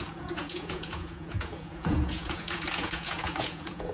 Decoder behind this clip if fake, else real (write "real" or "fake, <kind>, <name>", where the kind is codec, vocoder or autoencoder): fake, vocoder, Vocos